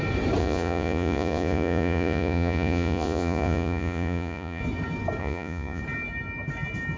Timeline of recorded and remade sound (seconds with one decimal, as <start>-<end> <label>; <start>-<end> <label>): 0.0-0.4 recorded; 0.4-4.6 remade; 4.6-5.2 recorded; 5.2-5.8 remade; 5.8-7.0 recorded